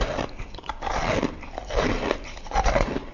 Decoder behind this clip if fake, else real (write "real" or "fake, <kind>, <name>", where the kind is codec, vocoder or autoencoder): real